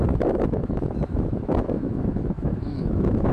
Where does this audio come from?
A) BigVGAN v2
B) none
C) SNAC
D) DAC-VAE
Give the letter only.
D